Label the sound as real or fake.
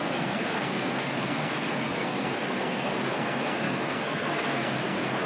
fake